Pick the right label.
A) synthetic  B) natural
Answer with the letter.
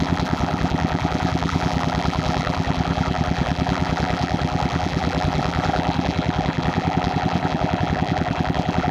A